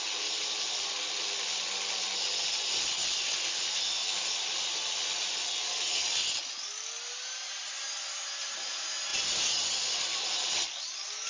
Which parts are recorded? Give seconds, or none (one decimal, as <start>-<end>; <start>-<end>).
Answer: 0.0-11.3